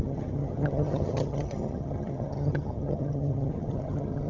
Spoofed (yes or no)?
yes